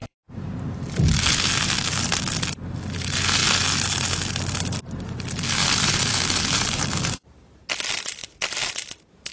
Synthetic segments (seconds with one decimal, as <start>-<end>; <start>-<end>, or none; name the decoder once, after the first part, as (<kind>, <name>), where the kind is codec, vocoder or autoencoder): 5.6-7.7 (vocoder, BigVGAN v2); 8.2-8.7